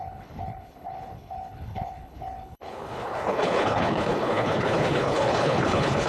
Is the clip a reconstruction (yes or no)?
yes